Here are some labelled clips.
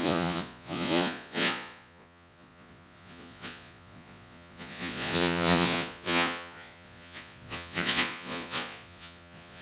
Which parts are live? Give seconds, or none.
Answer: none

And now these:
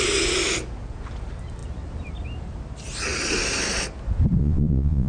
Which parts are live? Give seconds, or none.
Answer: 0.0-4.4